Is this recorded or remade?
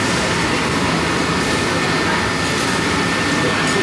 recorded